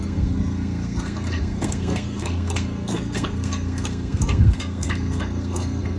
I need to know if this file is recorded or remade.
remade